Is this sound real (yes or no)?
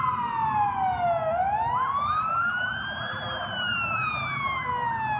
yes